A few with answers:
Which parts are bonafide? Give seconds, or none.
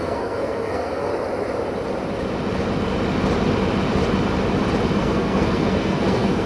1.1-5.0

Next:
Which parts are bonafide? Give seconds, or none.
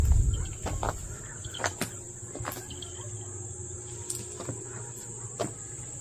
0.0-6.0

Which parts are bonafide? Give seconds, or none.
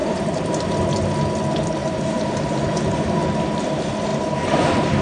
0.6-1.8; 3.4-5.0